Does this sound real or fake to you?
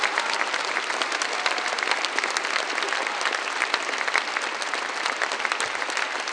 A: real